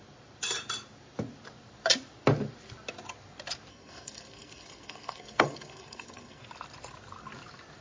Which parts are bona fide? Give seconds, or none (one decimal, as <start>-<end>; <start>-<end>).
0.0-3.7; 6.4-7.8